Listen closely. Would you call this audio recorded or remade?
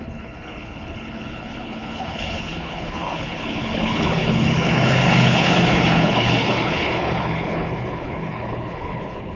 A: remade